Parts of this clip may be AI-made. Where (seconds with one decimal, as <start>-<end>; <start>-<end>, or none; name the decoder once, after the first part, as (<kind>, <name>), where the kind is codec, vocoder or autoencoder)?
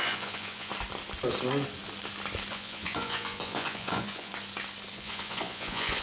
0.0-0.7 (vocoder, Vocos); 2.5-4.3; 4.9-6.0